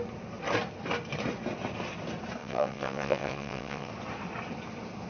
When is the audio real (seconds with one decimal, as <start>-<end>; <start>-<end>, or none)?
0.0-2.4; 3.9-5.1